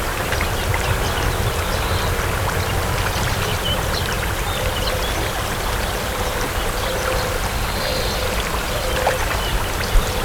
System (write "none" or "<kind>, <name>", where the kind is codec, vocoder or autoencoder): none